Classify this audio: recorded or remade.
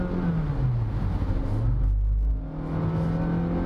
recorded